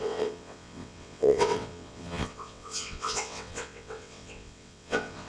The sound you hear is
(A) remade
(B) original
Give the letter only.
A